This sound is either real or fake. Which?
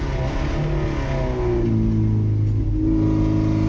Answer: real